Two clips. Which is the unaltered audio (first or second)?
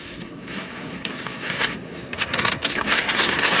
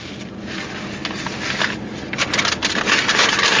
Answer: second